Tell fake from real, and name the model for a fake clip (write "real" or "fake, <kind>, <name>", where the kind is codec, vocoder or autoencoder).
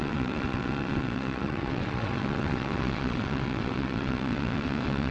fake, vocoder, WaveNeXt